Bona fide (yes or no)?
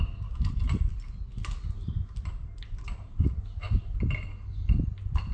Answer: yes